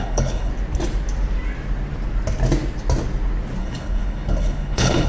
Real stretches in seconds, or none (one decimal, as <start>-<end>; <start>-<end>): 0.5-3.6